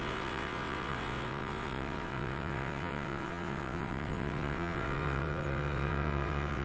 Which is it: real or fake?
fake